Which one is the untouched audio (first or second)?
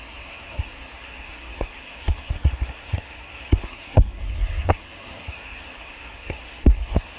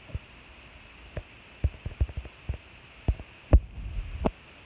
second